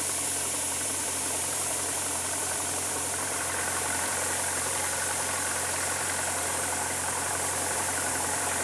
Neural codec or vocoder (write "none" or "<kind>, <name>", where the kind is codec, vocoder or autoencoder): vocoder, BigVGAN v2